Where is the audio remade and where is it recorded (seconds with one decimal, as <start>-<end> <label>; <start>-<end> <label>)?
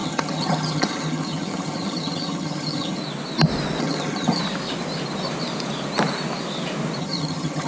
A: 0.0-3.0 remade; 3.0-3.8 recorded; 3.8-4.4 remade; 4.4-7.0 recorded; 7.0-7.7 remade